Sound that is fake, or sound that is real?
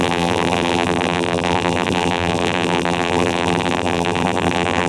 fake